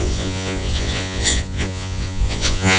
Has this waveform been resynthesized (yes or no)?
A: yes